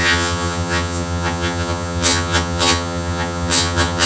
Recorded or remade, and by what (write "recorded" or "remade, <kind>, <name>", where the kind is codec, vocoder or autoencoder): remade, vocoder, HiFi-GAN